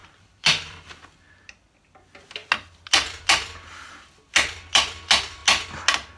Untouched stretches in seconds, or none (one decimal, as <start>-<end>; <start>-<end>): 1.0-6.2